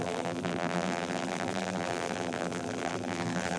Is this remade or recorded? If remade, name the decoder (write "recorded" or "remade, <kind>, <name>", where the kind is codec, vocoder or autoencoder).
remade, vocoder, BigVGAN v2